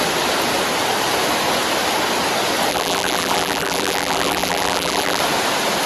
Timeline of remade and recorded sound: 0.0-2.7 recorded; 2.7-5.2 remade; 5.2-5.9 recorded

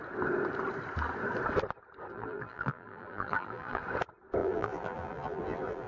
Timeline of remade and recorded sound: 0.0-2.1 recorded; 2.1-3.8 remade; 3.8-4.4 recorded; 4.4-5.9 remade